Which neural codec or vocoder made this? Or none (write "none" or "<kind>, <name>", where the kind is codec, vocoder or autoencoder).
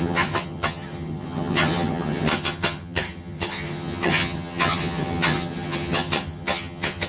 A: vocoder, HiFi-GAN